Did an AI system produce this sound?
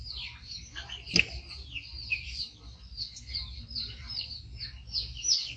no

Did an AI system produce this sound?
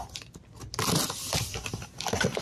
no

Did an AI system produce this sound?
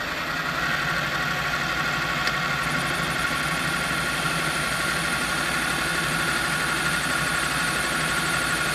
no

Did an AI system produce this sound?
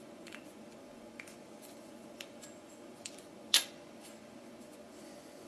yes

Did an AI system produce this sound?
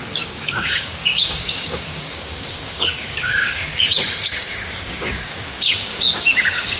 yes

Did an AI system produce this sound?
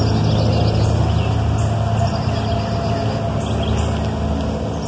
no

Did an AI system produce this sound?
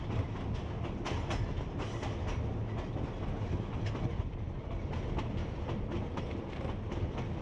no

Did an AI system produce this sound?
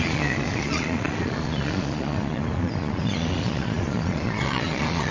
yes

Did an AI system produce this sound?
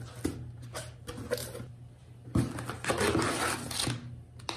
no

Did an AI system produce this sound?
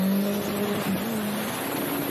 no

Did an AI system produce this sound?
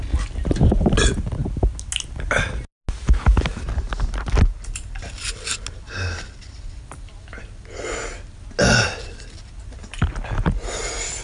no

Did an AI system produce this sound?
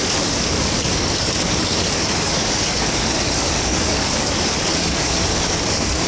yes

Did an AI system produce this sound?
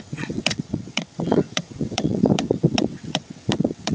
yes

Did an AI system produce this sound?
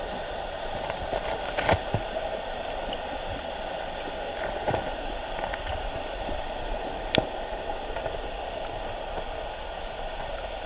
no